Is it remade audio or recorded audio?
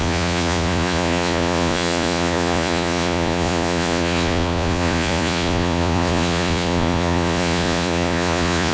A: remade